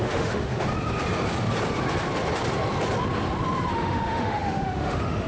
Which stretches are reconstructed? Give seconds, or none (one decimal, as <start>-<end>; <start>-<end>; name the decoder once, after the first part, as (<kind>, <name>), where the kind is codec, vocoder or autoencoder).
0.0-0.5 (autoencoder, DAC-VAE); 3.7-5.3